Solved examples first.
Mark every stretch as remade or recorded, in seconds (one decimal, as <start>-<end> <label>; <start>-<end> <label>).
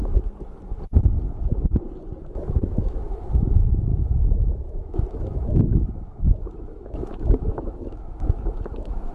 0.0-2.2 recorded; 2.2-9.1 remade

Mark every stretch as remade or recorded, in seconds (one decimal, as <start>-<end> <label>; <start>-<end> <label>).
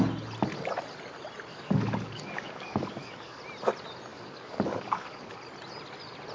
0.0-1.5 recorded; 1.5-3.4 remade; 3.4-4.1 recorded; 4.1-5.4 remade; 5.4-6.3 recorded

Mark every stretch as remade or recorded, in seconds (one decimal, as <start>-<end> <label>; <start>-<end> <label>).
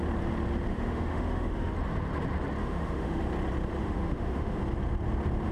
0.0-0.7 recorded; 0.7-1.7 remade; 1.7-2.6 recorded; 2.6-3.2 remade; 3.2-3.8 recorded; 3.8-4.6 remade; 4.6-5.5 recorded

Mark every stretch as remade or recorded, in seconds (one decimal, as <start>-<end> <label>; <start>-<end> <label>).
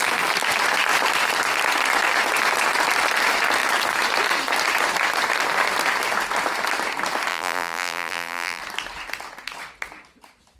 0.0-7.3 recorded; 7.3-8.6 remade; 8.6-10.6 recorded